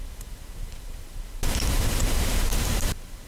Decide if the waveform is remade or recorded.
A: remade